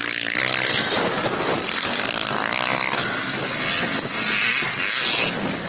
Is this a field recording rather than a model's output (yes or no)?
yes